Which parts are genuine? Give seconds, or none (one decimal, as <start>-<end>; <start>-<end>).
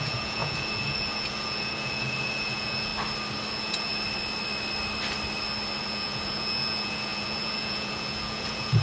2.9-3.5; 3.9-5.8